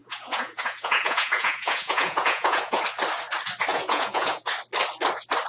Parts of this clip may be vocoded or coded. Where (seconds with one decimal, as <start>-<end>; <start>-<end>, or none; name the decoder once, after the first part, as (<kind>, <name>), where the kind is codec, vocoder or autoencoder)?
0.0-2.8 (vocoder, Vocos); 3.7-4.5